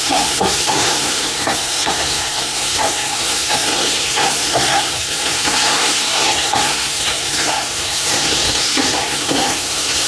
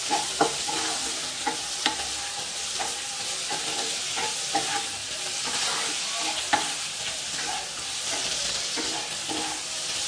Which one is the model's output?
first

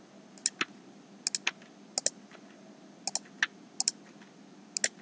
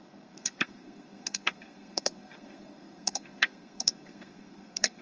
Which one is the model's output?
second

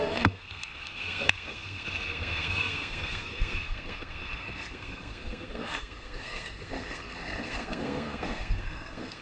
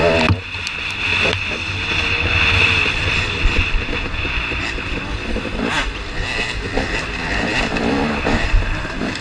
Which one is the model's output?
first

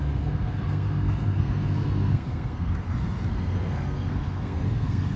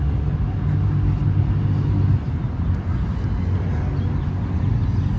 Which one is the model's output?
first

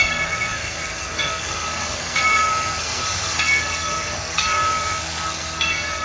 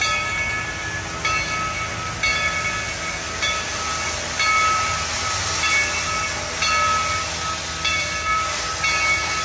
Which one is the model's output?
first